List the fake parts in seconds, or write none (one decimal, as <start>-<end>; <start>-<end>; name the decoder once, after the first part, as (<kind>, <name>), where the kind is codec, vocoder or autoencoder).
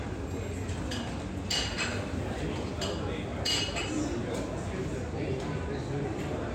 none